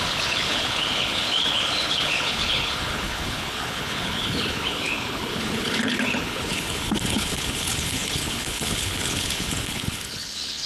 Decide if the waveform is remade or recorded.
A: remade